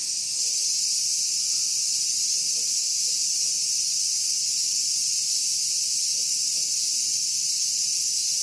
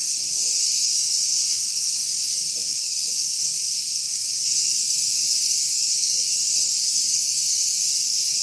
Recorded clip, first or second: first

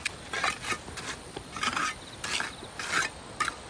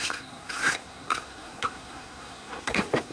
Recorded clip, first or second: first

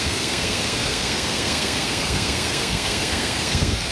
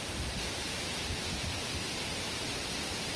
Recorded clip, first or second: second